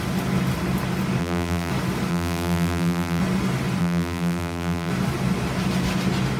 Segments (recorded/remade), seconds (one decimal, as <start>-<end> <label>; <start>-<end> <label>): 0.0-1.2 recorded; 1.2-1.7 remade; 1.7-2.1 recorded; 2.1-3.2 remade; 3.2-3.8 recorded; 3.8-4.9 remade; 4.9-6.4 recorded